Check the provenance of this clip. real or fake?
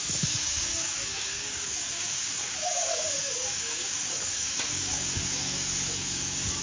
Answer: fake